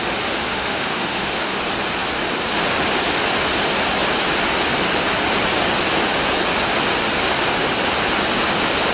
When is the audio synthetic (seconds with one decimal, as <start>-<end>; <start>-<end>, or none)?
0.5-1.6